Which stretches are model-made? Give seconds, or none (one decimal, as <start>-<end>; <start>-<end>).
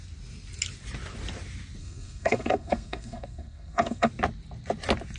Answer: 1.8-4.1